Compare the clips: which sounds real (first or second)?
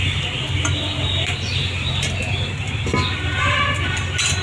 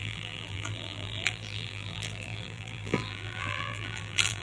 first